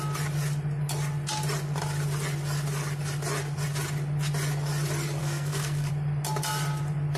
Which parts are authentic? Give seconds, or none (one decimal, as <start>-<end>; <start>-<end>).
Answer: 0.0-5.2; 5.9-7.2